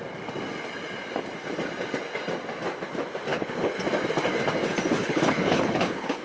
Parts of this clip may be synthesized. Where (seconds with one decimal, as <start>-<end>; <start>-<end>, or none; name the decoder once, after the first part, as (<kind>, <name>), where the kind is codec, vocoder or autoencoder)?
3.3-3.8 (codec, HILCodec); 5.0-6.2